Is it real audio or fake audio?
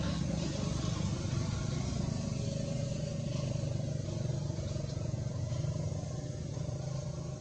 real